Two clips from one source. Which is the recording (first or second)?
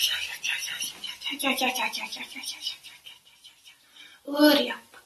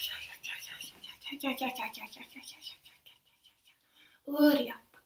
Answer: first